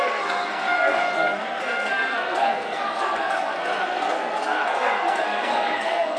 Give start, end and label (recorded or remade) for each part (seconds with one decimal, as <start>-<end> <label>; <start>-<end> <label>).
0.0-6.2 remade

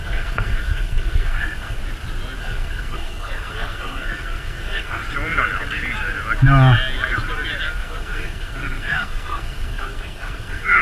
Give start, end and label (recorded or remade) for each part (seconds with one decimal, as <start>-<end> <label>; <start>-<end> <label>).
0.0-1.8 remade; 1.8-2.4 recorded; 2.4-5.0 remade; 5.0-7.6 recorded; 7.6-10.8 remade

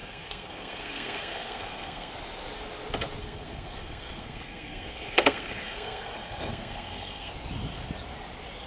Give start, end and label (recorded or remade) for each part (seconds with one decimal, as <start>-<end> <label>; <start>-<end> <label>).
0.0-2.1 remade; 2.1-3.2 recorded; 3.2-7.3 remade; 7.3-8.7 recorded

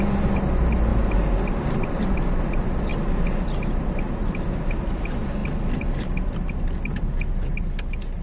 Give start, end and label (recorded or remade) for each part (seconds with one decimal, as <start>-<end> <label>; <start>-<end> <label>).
0.0-8.2 recorded

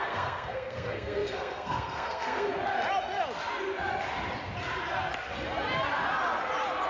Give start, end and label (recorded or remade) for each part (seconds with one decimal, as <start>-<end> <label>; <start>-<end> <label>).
0.0-2.5 remade; 2.5-6.9 recorded

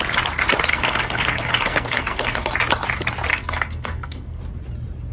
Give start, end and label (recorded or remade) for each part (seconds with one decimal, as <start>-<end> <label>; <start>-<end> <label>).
0.0-0.7 recorded; 0.7-2.5 remade; 2.5-3.3 recorded; 3.3-4.4 remade; 4.4-5.1 recorded

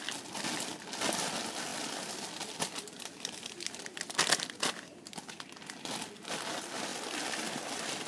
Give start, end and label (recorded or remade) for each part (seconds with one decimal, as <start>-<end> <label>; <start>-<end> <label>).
0.0-8.1 recorded